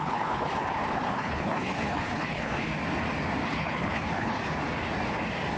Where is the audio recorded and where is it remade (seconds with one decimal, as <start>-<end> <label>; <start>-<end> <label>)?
0.0-2.7 remade; 2.7-3.5 recorded; 3.5-4.4 remade; 4.4-5.6 recorded